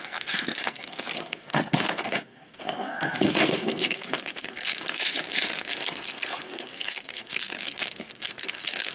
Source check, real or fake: fake